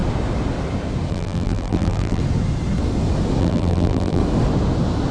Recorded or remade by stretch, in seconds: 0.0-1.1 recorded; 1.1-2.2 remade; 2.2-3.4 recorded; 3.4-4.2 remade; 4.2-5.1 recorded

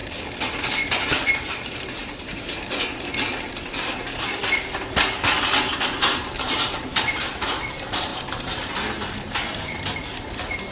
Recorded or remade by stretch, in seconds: 0.0-0.9 recorded; 0.9-3.1 remade; 3.1-3.7 recorded; 3.7-4.4 remade; 4.4-6.1 recorded; 6.1-10.7 remade

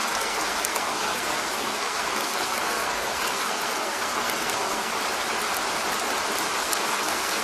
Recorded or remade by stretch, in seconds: 0.0-4.9 remade; 4.9-6.6 recorded; 6.6-7.4 remade